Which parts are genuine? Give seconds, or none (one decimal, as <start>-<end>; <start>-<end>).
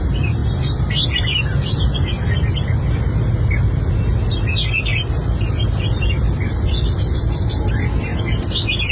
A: 0.0-4.9; 7.5-8.9